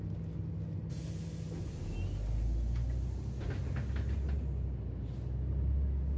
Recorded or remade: recorded